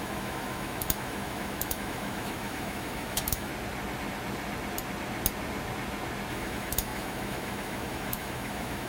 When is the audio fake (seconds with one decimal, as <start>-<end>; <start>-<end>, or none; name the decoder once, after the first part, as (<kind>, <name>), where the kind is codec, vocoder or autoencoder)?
0.0-3.5 (autoencoder, DAC-VAE); 6.3-8.9